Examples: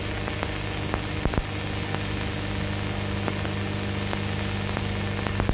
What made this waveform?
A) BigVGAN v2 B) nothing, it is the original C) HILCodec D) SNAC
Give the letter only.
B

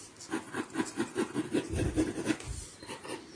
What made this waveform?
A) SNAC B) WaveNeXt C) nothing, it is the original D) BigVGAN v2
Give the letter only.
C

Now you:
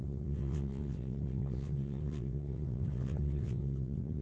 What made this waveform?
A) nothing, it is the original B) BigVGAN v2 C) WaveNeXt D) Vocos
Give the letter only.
C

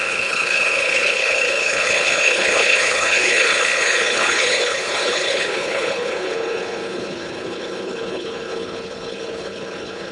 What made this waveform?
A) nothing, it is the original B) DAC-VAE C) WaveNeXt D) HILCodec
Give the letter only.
D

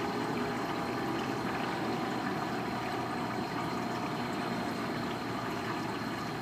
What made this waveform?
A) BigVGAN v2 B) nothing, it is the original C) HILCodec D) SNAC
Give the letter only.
B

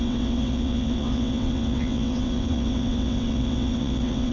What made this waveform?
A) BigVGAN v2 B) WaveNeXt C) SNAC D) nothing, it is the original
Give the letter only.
B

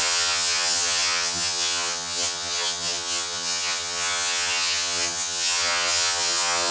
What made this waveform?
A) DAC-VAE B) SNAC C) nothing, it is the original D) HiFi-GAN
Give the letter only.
D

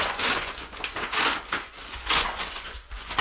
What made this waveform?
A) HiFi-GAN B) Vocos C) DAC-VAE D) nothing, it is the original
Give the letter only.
B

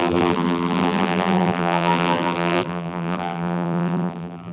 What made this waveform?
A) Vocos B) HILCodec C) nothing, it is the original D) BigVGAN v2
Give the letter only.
D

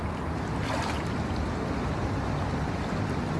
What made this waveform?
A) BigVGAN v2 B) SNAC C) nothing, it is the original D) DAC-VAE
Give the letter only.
C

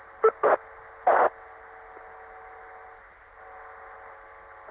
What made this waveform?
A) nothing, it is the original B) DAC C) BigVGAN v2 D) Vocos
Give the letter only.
A